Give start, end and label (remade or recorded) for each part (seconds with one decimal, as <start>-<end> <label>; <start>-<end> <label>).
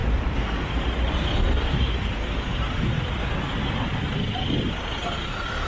0.0-5.7 recorded